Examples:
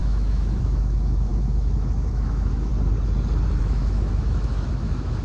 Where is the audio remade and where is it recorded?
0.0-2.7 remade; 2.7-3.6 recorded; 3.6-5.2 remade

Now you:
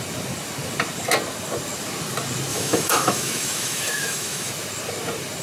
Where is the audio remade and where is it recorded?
0.0-2.5 recorded; 2.5-4.5 remade; 4.5-5.4 recorded

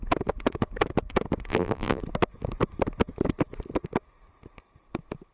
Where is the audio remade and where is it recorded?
0.0-1.5 recorded; 1.5-2.0 remade; 2.0-5.3 recorded